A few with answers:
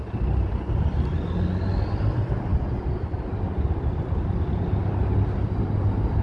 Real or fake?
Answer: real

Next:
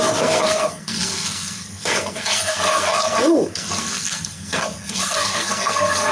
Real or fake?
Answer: fake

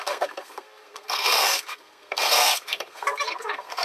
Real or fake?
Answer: fake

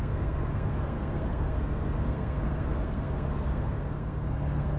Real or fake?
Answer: fake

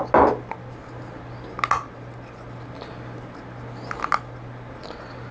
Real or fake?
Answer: real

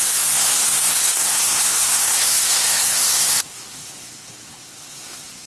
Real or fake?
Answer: fake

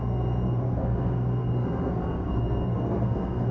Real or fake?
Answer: fake